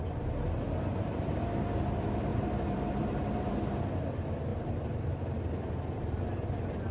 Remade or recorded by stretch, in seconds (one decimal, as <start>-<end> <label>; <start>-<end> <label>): 0.0-2.3 recorded; 2.3-3.5 remade; 3.5-4.5 recorded; 4.5-5.2 remade; 5.2-6.9 recorded